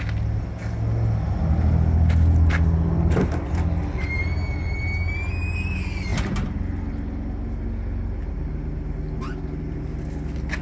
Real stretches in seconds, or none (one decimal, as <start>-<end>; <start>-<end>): 0.0-10.6